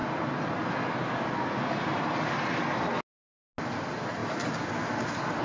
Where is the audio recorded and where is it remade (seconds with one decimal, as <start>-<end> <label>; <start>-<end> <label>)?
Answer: 0.0-4.2 recorded; 4.2-5.4 remade